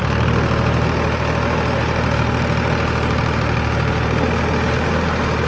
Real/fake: real